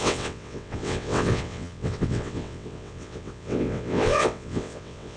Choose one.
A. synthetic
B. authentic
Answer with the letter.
A